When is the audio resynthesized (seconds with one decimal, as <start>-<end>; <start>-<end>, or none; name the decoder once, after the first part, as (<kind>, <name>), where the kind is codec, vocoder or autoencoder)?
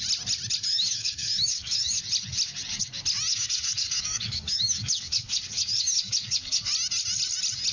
0.7-2.0 (codec, DAC); 3.3-6.7